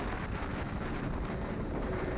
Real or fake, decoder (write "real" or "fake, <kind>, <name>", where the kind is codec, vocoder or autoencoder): real